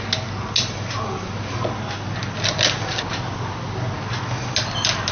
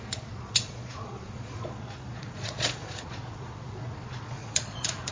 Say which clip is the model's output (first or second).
second